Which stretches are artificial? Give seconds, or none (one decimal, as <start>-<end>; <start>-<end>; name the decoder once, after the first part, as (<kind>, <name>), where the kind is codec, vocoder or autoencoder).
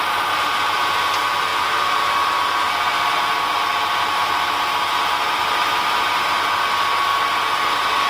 none